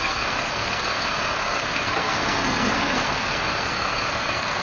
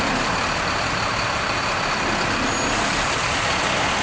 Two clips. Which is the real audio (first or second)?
second